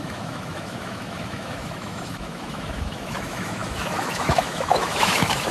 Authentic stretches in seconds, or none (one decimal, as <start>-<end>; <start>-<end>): none